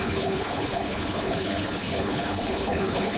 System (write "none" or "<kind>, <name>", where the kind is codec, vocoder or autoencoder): codec, HILCodec